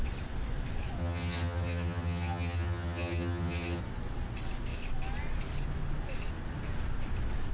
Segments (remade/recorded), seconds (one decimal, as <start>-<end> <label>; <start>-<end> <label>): 0.0-1.0 recorded; 1.0-3.8 remade; 3.8-7.5 recorded